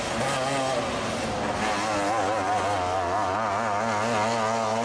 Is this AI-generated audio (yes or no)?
no